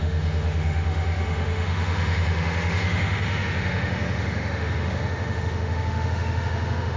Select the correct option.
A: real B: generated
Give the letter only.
B